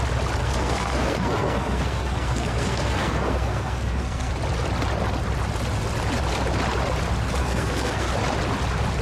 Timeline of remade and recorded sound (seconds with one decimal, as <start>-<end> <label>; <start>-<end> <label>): 0.0-0.4 recorded; 0.4-4.3 remade; 4.3-7.4 recorded; 7.4-8.1 remade; 8.1-9.0 recorded